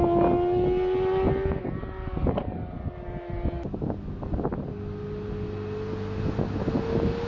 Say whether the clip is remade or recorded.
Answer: recorded